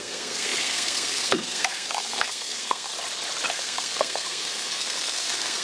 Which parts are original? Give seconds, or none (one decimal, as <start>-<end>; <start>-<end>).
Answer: 2.9-3.5